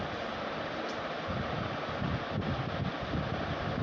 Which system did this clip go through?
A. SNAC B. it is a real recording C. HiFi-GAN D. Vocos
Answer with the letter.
B